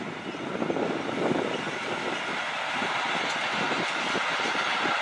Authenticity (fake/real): real